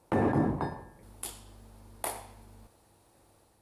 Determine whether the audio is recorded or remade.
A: recorded